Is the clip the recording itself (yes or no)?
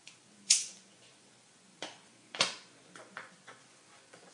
no